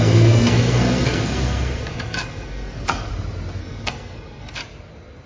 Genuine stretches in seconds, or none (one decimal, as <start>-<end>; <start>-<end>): 3.1-3.6; 4.6-5.3